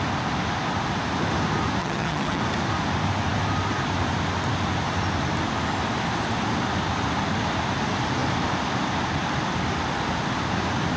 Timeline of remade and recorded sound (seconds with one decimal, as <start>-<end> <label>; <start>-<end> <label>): 0.0-1.8 recorded; 1.8-2.4 remade; 2.4-11.0 recorded